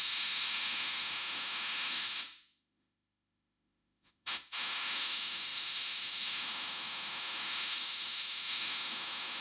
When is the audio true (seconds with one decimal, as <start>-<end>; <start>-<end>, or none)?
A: none